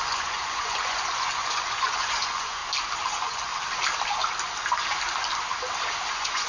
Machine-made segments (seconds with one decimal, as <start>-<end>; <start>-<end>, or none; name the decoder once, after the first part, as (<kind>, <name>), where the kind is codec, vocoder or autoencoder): 0.0-2.6 (vocoder, Vocos); 3.1-3.5; 6.1-6.5

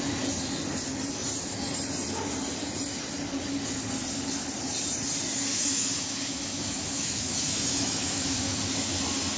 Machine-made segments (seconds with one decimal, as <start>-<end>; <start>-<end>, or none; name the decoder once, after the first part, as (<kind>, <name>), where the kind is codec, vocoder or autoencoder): 5.5-8.6 (autoencoder, DAC-VAE)